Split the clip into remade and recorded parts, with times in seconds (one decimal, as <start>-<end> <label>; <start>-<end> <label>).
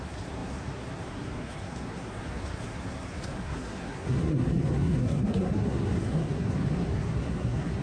0.0-7.8 remade